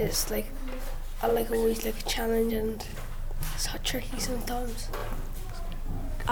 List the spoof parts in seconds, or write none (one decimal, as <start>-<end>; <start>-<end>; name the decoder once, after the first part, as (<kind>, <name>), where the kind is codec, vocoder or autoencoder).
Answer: none